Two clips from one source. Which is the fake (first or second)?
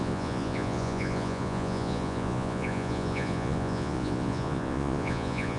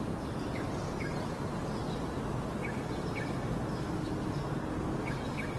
first